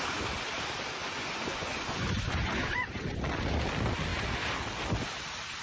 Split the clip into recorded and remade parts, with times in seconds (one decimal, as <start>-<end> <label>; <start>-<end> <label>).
0.0-1.0 recorded; 1.0-3.2 remade; 3.2-5.6 recorded